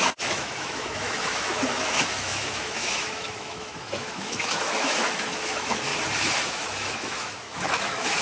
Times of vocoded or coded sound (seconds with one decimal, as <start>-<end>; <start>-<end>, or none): 0.0-5.9; 6.5-8.2